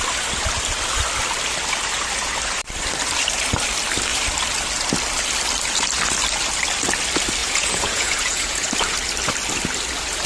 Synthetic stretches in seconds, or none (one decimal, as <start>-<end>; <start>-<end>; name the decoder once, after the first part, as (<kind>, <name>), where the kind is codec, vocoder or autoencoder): 7.4-8.7 (vocoder, Vocos)